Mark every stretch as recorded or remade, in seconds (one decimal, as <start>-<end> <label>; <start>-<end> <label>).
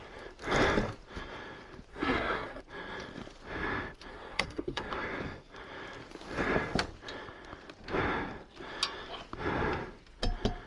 0.0-1.9 recorded; 1.9-2.6 remade; 2.6-4.1 recorded; 4.1-4.9 remade; 4.9-10.7 recorded